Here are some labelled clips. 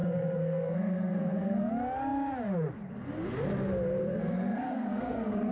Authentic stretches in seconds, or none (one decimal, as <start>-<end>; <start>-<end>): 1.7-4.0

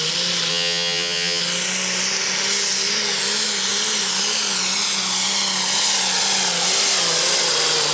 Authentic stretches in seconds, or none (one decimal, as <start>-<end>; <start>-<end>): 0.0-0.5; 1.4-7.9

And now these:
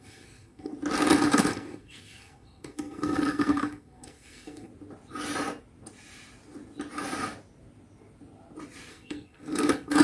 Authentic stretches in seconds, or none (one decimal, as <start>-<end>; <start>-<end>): 0.7-1.3; 4.7-8.9